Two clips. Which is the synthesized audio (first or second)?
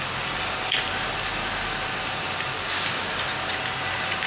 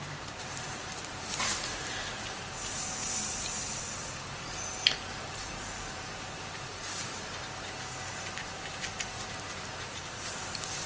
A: second